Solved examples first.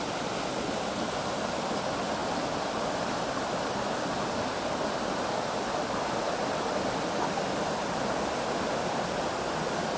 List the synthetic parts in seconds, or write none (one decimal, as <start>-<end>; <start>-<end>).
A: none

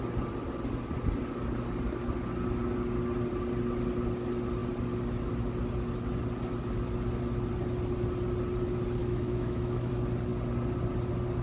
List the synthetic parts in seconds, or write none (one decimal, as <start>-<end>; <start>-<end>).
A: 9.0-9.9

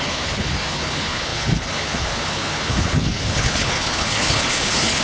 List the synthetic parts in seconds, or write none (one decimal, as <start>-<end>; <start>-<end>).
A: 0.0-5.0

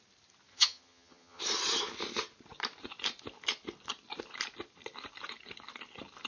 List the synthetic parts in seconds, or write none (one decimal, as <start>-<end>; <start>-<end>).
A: 0.5-1.4

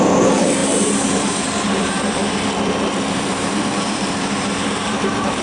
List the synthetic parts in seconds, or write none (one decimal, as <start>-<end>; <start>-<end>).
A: 0.0-2.2; 2.9-5.4

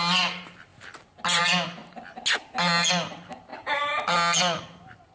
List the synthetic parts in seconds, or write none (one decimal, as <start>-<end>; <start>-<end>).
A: none

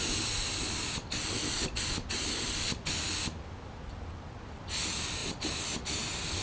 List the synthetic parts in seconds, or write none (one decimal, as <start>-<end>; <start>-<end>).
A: none